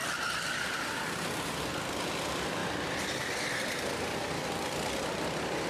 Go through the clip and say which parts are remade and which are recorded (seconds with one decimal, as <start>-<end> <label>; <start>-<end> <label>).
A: 0.0-5.7 recorded